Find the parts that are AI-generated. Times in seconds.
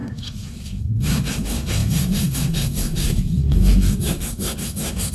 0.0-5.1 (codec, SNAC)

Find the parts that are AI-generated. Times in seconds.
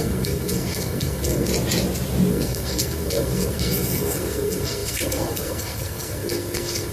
0.0-1.5 (codec, SNAC); 2.3-6.9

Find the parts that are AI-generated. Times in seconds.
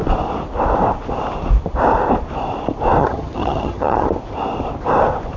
3.0-4.1 (vocoder, HiFi-GAN)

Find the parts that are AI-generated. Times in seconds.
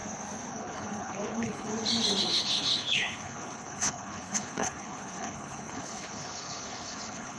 0.5-1.7 (codec, HILCodec); 2.2-7.4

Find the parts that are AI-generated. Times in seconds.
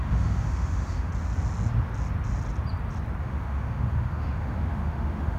0.0-1.1 (autoencoder, DAC-VAE); 3.2-5.4